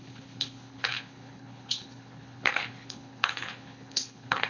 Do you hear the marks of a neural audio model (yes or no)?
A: yes